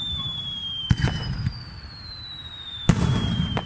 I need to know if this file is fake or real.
real